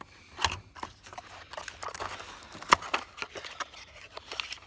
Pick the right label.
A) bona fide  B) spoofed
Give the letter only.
A